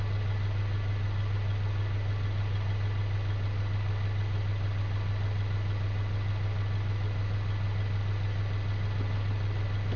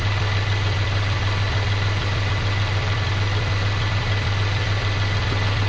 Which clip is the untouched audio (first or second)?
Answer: first